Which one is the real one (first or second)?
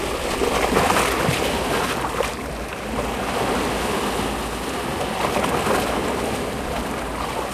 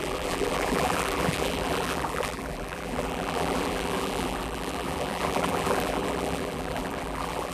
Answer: first